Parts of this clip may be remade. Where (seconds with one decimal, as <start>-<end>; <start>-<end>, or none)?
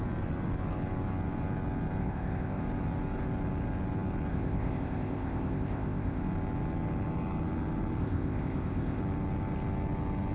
2.0-2.6; 4.3-6.2; 8.0-9.0